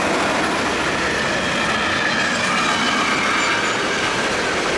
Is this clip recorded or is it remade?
recorded